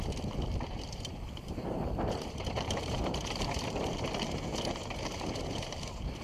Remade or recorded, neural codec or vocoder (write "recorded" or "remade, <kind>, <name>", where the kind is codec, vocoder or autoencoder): remade, vocoder, BigVGAN v2